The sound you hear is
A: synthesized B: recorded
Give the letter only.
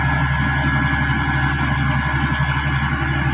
B